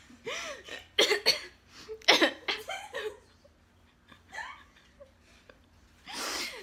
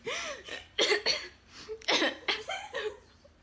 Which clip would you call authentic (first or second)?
first